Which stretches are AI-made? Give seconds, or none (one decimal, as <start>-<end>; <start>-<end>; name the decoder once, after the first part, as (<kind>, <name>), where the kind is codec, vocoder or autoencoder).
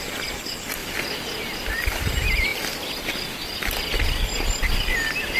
0.8-1.7 (vocoder, BigVGAN v2)